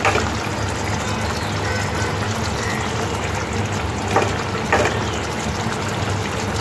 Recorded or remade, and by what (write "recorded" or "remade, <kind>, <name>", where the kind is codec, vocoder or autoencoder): recorded